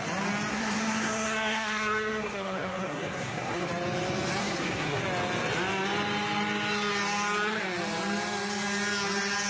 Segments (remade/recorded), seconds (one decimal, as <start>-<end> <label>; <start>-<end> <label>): 0.0-0.5 recorded; 0.5-3.7 remade; 3.7-4.4 recorded; 4.4-5.0 remade; 5.0-9.5 recorded